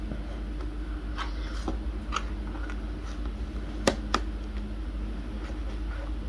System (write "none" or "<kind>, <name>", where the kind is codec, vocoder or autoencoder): none